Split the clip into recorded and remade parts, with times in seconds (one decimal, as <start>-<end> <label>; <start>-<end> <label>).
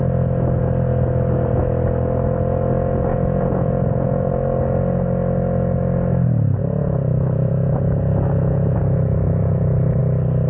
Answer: 0.0-3.1 recorded; 3.1-4.3 remade; 4.3-6.6 recorded; 6.6-10.0 remade; 10.0-10.5 recorded